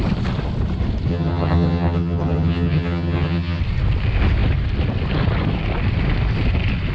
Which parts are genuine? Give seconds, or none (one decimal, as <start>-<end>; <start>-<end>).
0.0-1.1; 3.6-6.9